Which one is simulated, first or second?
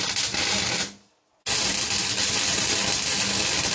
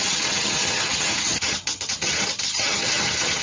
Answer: second